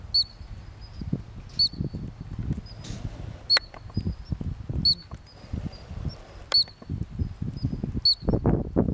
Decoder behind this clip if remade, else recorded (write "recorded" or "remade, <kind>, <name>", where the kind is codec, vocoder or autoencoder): recorded